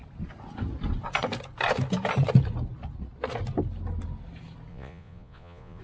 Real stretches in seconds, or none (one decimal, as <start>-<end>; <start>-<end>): 0.0-4.7

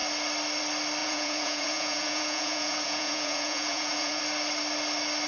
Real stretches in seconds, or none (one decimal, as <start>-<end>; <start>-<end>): 0.0-1.0; 4.2-5.3

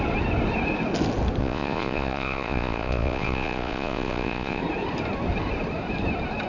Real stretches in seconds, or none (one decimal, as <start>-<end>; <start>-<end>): 0.0-1.4; 4.6-6.5

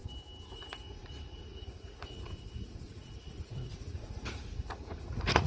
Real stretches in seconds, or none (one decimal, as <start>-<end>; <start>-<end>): 0.0-0.5

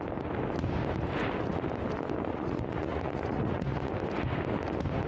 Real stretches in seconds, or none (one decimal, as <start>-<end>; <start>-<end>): 0.0-2.3; 3.9-5.1

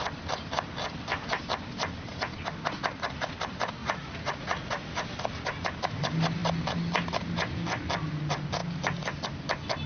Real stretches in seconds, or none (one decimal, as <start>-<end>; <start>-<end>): 0.0-3.8; 4.9-9.9

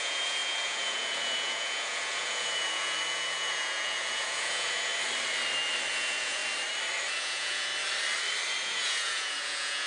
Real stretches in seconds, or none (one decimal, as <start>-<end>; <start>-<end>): 4.9-5.9; 6.4-7.1; 7.7-8.6

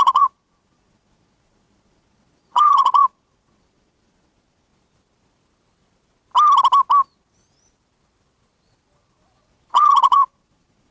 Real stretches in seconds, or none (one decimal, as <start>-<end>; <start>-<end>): 4.7-9.4